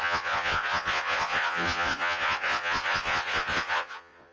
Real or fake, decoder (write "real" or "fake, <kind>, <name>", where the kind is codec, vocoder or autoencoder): fake, vocoder, Vocos